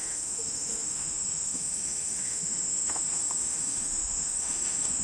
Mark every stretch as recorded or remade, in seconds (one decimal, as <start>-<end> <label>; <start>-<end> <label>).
0.0-5.0 remade